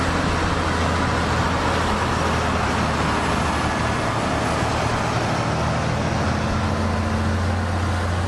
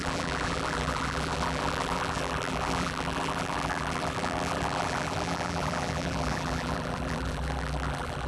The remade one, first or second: second